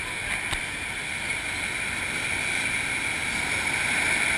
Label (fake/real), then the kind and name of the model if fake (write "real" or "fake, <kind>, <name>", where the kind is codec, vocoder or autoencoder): real